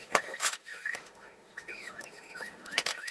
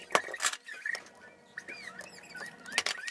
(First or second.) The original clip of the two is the second